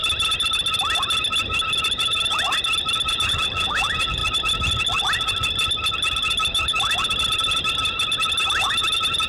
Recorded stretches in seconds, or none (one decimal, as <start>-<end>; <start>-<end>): 0.0-3.1; 4.2-9.3